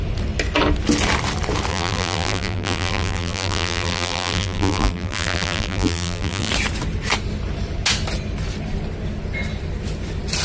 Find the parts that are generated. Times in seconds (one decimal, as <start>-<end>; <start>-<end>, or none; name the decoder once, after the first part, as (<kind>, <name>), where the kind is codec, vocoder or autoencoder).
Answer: 1.7-6.5 (vocoder, BigVGAN v2)